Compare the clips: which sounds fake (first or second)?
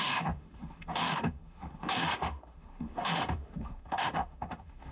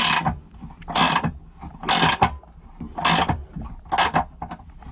first